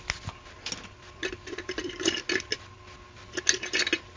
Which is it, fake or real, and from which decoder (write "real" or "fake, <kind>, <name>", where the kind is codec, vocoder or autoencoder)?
real